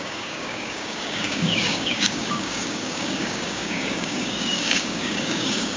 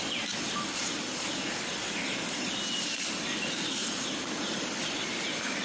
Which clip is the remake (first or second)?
first